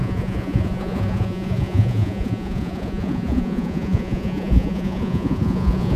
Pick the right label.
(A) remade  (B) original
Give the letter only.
A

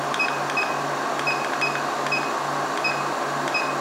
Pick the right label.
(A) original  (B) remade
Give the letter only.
A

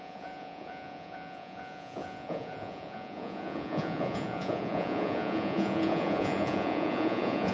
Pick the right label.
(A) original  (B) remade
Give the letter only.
B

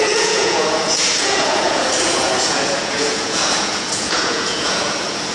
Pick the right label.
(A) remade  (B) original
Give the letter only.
A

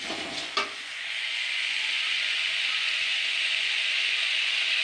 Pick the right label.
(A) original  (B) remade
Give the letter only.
B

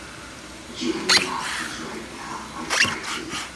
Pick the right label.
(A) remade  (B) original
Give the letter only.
B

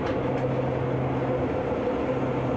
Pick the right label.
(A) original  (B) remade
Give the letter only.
A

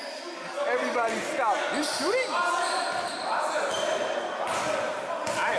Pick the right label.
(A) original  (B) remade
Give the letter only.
A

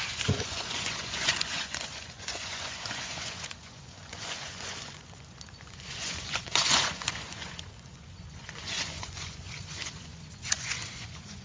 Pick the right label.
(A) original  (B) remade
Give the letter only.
B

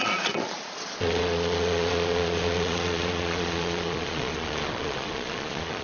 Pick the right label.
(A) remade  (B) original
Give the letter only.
A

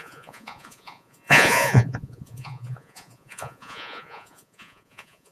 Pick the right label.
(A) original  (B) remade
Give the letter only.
B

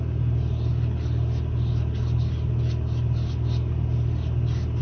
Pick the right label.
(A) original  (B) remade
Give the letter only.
A